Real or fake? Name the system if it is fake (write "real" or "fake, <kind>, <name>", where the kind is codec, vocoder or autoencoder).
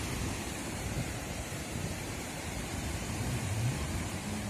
fake, vocoder, BigVGAN v2